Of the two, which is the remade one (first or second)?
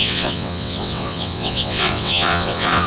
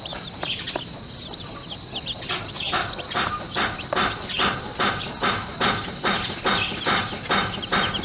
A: first